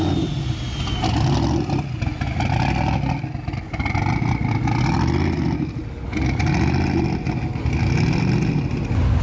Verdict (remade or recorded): recorded